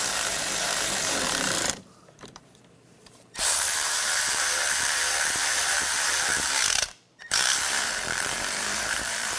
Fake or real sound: fake